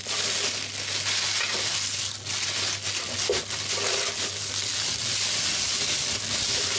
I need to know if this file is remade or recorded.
recorded